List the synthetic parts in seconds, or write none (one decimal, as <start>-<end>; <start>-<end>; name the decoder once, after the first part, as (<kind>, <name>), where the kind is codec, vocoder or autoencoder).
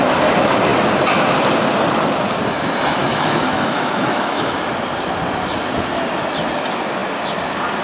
3.0-4.7 (autoencoder, DAC-VAE)